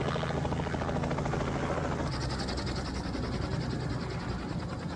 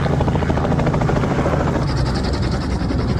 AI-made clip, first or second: second